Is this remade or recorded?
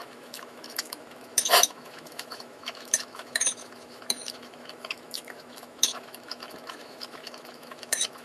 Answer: remade